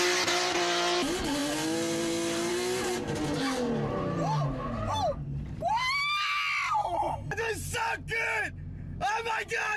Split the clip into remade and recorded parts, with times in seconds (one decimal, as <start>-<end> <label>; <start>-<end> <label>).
0.0-9.8 recorded